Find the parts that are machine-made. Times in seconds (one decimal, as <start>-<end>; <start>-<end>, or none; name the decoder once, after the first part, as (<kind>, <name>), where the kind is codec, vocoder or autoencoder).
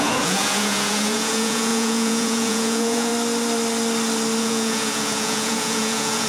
0.0-3.1 (vocoder, Vocos); 4.4-6.3